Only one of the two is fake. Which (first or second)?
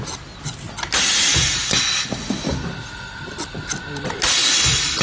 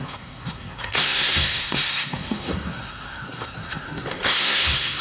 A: second